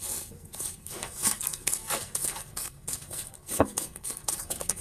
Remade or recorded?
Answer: remade